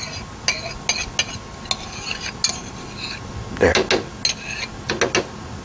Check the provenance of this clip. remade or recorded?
recorded